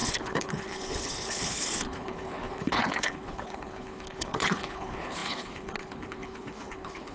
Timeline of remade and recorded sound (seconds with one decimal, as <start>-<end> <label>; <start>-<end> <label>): 0.0-7.1 remade